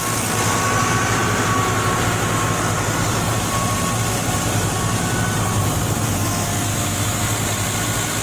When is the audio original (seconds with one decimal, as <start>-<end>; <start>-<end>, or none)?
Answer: 0.0-6.7; 7.2-8.2